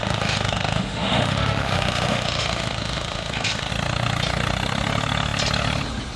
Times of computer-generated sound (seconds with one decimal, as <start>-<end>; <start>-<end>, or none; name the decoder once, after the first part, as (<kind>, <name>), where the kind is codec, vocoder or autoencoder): 0.0-3.7 (autoencoder, DAC-VAE)